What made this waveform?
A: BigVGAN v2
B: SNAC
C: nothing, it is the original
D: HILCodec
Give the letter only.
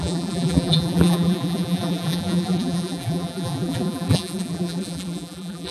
A